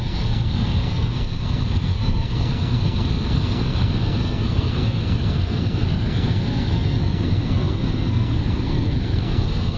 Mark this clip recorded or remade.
remade